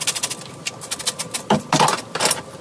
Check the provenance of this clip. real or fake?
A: real